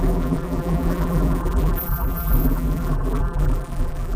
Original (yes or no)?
no